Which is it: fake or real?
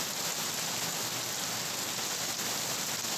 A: real